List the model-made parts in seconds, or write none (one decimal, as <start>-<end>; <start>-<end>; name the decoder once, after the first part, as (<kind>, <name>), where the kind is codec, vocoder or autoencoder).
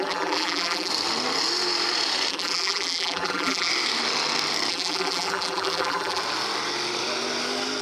0.0-0.9 (vocoder, BigVGAN v2); 2.3-3.7; 4.7-6.2